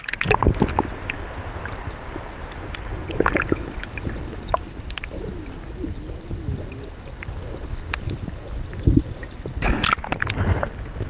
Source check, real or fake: real